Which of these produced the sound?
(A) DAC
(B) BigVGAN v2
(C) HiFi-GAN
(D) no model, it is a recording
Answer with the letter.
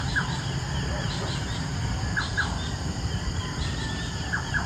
B